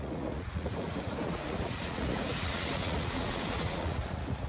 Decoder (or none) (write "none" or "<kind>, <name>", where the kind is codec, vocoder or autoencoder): vocoder, Vocos